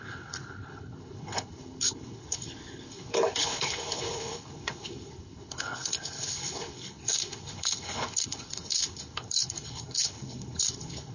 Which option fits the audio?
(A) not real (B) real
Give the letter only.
A